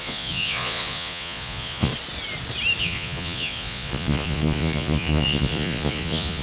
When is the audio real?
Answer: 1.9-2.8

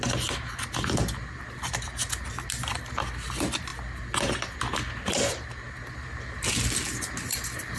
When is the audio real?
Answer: 0.0-7.8

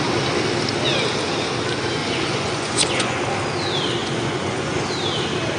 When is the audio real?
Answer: 0.0-2.0; 3.2-4.0; 4.8-5.6